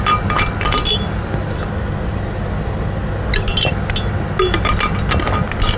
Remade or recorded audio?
recorded